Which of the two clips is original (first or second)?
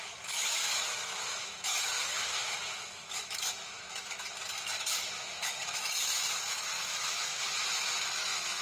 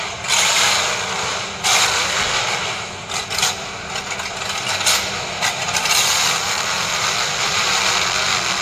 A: second